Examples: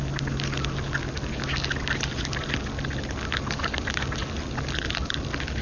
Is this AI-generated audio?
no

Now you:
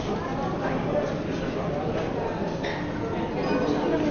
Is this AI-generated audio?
no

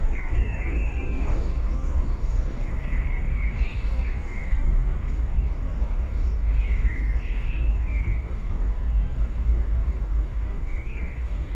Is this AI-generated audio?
yes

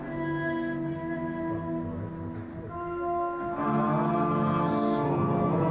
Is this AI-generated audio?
no